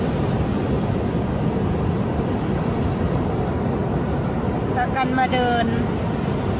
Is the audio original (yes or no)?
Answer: yes